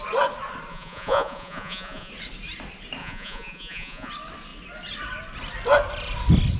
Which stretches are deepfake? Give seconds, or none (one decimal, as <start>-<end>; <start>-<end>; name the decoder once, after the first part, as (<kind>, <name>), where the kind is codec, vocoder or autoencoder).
0.7-2.1 (vocoder, Vocos); 3.0-4.1